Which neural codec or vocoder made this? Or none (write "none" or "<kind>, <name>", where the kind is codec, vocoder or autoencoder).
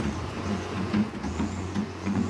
vocoder, Vocos